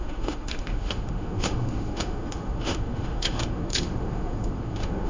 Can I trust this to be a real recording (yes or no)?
no